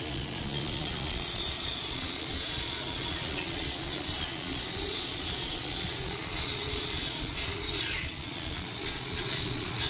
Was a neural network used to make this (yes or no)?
yes